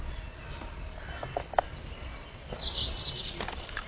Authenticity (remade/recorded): recorded